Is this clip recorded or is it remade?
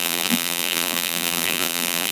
remade